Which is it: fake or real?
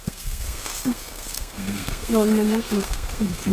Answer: fake